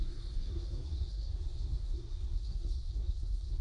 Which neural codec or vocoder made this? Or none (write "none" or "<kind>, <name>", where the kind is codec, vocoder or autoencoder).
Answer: codec, SNAC